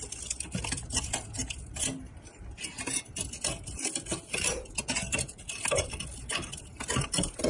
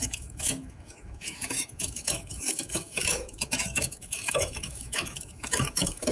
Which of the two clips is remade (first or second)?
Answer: second